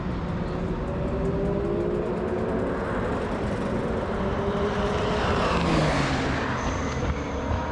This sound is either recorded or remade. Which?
recorded